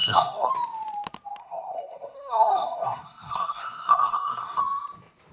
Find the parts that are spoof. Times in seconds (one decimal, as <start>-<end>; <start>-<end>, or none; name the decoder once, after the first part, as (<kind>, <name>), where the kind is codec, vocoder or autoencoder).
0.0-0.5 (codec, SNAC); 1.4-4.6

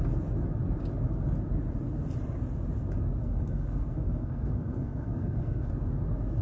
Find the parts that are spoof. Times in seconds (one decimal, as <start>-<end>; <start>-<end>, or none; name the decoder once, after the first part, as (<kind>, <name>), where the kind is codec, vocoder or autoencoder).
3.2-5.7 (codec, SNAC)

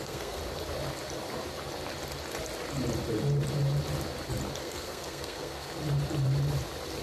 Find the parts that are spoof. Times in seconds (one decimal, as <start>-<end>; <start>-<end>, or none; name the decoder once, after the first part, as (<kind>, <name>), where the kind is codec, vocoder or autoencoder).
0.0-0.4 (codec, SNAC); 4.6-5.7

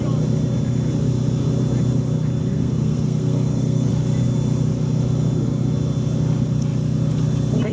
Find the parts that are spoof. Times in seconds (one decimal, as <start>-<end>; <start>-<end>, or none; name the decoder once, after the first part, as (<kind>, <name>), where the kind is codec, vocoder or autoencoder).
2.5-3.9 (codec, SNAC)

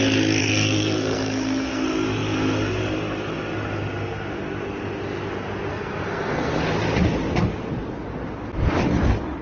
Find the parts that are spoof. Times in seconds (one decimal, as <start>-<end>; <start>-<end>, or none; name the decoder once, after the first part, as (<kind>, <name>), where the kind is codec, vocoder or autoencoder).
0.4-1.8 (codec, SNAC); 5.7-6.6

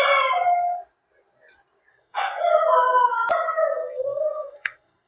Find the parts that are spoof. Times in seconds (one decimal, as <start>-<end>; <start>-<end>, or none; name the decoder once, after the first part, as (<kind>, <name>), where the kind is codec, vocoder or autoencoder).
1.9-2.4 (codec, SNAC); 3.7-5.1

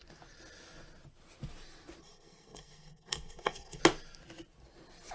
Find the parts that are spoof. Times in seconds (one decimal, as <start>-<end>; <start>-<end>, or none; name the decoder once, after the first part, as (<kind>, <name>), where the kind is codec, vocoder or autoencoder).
2.0-3.8 (codec, SNAC)

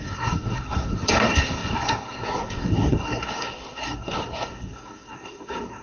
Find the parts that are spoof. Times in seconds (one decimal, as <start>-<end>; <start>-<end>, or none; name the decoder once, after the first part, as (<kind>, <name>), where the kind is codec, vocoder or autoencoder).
0.0-5.8 (codec, SNAC)